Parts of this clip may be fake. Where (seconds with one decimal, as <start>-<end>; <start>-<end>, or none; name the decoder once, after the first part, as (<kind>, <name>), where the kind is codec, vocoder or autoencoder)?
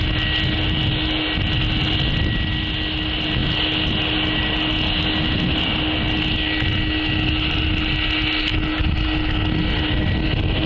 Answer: none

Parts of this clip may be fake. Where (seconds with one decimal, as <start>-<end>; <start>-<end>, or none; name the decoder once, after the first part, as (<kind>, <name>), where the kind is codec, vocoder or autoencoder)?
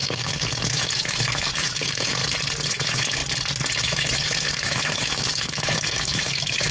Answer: 0.0-2.2 (autoencoder, DAC-VAE); 2.7-3.2; 3.8-6.7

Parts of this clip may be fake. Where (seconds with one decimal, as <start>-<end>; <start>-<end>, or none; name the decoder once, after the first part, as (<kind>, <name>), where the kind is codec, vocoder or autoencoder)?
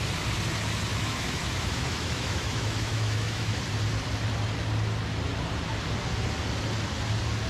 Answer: 0.9-3.6 (autoencoder, DAC-VAE)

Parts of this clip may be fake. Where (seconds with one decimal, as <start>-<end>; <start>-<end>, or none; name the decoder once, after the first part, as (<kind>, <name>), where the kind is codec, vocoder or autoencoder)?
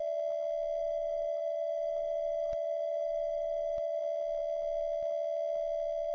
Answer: 0.8-4.0 (autoencoder, DAC-VAE)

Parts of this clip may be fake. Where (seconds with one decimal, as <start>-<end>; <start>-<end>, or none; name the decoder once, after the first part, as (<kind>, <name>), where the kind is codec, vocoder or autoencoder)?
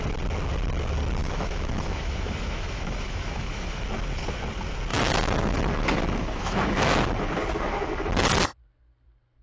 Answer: 1.2-3.8 (autoencoder, DAC-VAE); 4.9-7.0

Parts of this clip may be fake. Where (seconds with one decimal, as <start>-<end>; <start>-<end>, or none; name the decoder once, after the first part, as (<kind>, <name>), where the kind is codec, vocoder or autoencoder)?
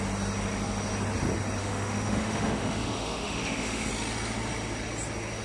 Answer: 1.6-3.9 (autoencoder, DAC-VAE)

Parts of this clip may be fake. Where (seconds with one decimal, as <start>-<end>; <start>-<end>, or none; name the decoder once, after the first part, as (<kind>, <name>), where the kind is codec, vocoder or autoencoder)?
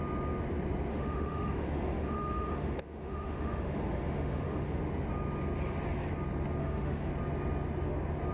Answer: 0.9-4.8 (autoencoder, DAC-VAE); 6.6-7.1